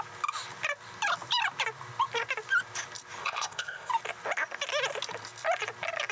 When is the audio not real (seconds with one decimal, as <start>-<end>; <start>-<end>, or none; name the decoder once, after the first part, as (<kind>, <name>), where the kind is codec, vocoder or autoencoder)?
3.2-3.9 (codec, ZipCodec)